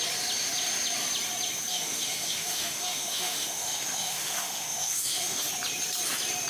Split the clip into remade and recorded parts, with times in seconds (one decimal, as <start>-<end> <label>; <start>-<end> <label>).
0.0-1.7 recorded; 1.7-5.5 remade; 5.5-6.5 recorded